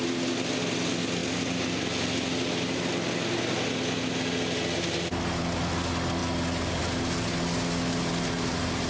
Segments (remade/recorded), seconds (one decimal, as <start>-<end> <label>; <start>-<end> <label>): 0.0-8.9 recorded